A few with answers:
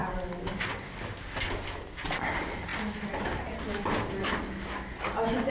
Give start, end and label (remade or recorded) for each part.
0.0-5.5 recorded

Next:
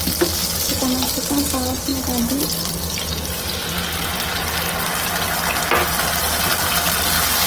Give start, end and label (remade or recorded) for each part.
0.0-7.5 recorded

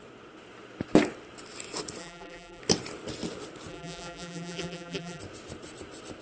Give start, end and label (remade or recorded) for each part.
0.0-2.0 recorded; 2.0-2.6 remade; 2.6-3.7 recorded; 3.7-5.2 remade; 5.2-6.2 recorded